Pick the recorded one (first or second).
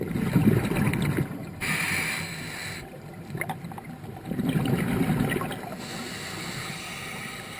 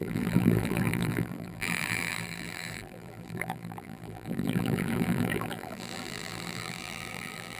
first